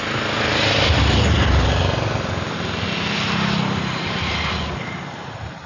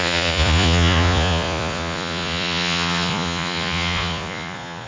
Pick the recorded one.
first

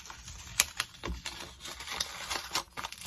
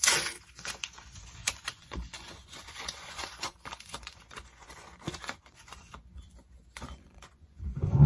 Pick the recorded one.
first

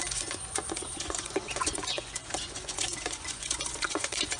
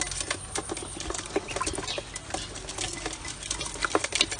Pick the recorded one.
second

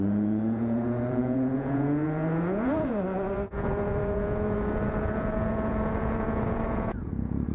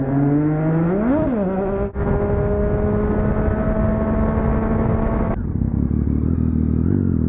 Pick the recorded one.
second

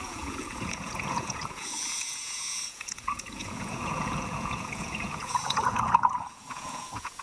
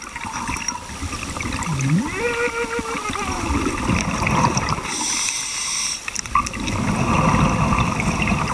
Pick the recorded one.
second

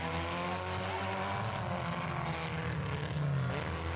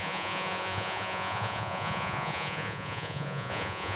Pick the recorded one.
first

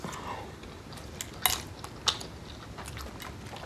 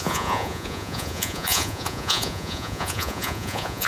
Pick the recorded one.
first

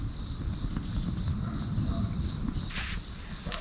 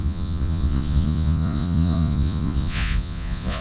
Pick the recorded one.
first